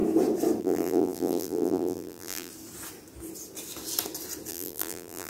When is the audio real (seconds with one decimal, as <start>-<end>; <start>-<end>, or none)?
0.0-0.6; 2.5-4.5